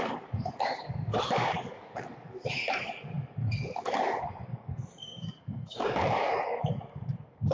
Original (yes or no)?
no